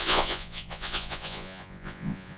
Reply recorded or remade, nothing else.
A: remade